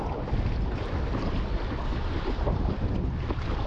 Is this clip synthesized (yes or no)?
no